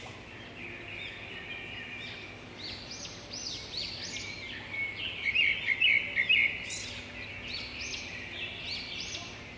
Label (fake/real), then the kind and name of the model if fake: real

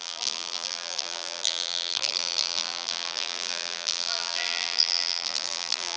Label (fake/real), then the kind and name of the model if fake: fake, vocoder, BigVGAN v2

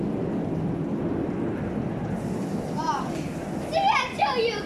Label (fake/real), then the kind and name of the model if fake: real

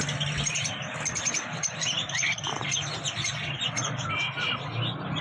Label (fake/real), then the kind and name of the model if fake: real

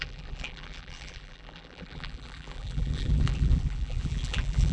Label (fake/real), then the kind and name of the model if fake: fake, vocoder, BigVGAN v2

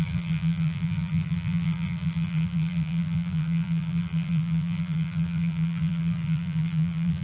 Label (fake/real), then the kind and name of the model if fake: fake, vocoder, BigVGAN v2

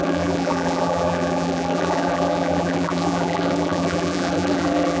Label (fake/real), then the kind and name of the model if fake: fake, vocoder, BigVGAN v2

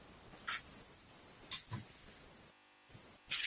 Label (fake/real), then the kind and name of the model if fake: real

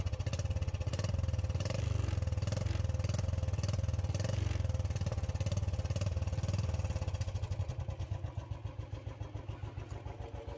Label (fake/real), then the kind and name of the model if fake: real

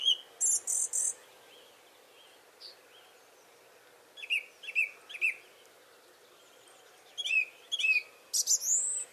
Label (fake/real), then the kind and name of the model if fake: real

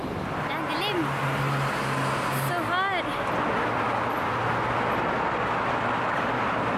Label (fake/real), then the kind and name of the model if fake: real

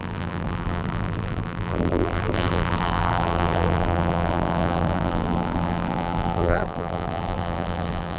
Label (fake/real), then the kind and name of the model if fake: fake, vocoder, BigVGAN v2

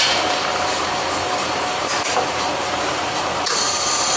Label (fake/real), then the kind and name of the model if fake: fake, vocoder, BigVGAN v2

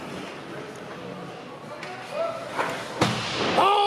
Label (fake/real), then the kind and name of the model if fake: real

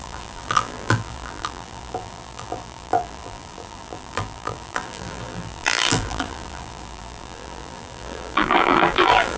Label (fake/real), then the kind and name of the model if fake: fake, vocoder, BigVGAN v2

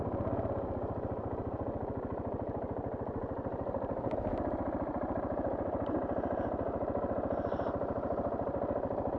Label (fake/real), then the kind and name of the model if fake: fake, vocoder, BigVGAN v2